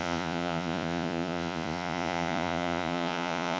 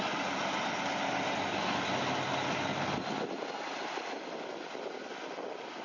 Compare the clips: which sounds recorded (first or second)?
second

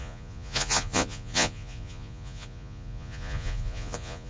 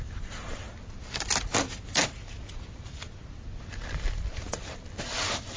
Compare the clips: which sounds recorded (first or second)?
second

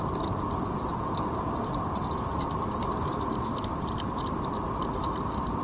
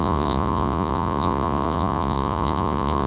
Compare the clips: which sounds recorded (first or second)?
first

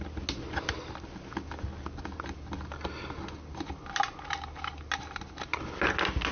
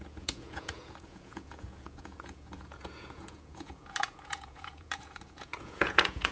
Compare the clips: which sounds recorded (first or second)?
first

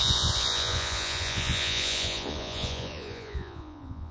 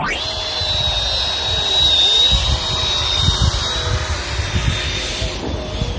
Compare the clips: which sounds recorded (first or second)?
second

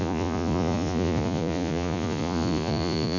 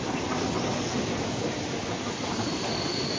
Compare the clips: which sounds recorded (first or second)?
second